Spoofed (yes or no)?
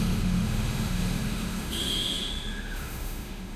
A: yes